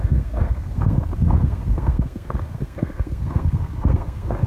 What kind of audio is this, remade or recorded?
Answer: remade